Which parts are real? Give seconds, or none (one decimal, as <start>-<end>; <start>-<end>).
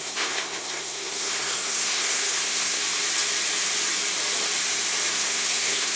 2.8-5.1